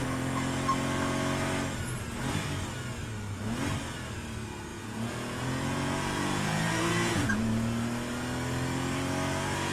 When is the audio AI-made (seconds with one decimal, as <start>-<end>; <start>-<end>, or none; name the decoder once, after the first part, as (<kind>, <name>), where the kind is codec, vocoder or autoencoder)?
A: 4.7-7.4 (vocoder, Vocos)

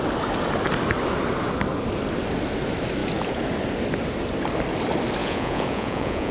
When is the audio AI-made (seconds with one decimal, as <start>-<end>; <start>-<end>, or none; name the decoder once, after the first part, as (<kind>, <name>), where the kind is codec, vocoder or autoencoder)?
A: 5.2-6.3 (vocoder, Vocos)

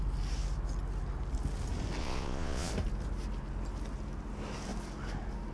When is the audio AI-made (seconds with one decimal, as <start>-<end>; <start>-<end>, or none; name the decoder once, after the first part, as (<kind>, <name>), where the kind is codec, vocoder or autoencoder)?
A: 2.0-2.7 (vocoder, Vocos)

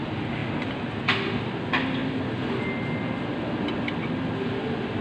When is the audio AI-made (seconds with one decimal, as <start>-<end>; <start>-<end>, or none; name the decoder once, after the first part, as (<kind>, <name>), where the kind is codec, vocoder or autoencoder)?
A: none

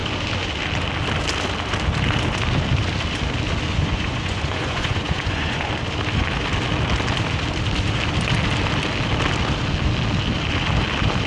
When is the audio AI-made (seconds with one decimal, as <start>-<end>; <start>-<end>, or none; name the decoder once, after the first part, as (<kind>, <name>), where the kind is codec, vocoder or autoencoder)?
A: 3.7-5.7 (vocoder, Vocos)

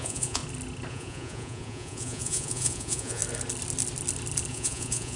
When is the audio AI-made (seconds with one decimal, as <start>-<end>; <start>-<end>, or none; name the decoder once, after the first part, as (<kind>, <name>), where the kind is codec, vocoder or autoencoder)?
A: 0.0-0.4 (vocoder, Vocos); 0.9-3.2; 4.5-5.2